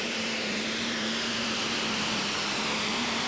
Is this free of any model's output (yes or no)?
no